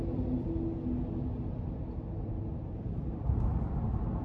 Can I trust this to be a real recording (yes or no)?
yes